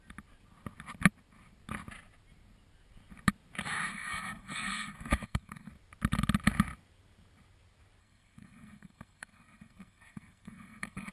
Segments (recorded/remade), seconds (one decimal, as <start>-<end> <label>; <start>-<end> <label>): 0.0-3.9 recorded; 3.9-5.7 remade; 5.7-8.0 recorded; 8.0-11.1 remade